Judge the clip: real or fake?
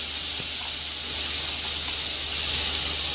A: real